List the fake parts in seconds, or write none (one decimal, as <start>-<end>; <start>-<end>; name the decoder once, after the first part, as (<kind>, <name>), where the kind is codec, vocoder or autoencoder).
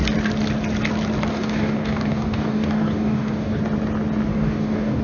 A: 1.3-3.6 (codec, DAC); 4.3-5.0